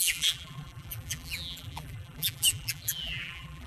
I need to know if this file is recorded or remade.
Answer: remade